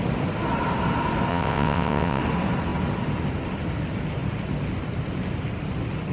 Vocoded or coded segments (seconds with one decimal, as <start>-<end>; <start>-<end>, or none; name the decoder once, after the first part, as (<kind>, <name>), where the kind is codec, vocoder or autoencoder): 1.3-2.2 (vocoder, WaveNeXt)